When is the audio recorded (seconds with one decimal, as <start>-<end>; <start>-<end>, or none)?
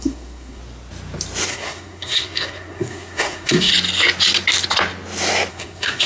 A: 0.6-1.5; 3.7-5.5